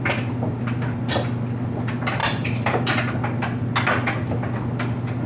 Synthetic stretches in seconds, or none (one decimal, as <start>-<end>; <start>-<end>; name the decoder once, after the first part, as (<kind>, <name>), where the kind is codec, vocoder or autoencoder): 2.2-2.9 (vocoder, BigVGAN v2)